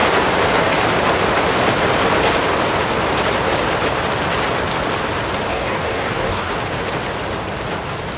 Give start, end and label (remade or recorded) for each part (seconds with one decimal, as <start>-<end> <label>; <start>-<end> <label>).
0.0-5.5 recorded; 5.5-6.5 remade; 6.5-8.2 recorded